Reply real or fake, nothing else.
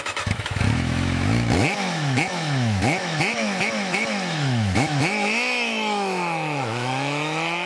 fake